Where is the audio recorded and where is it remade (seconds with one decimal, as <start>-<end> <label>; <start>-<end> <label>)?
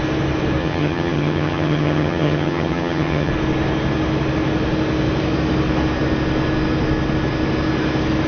0.0-0.6 recorded; 0.6-3.3 remade; 3.3-8.3 recorded